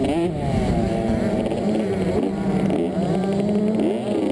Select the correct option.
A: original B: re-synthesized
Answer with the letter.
A